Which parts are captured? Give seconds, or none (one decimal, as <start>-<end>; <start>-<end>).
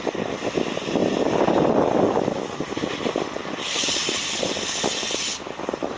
0.0-6.0